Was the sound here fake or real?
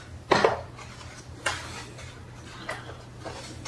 real